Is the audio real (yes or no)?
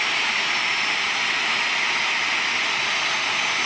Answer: yes